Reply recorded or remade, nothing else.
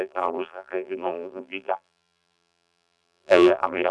remade